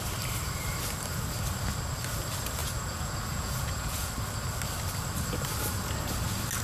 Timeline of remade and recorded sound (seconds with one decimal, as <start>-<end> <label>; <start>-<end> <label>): 0.0-2.6 recorded; 2.6-4.1 remade; 4.1-6.6 recorded